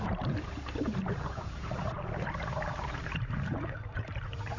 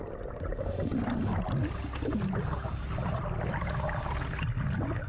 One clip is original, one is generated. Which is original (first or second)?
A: second